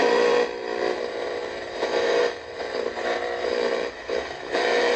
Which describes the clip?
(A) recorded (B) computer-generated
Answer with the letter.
B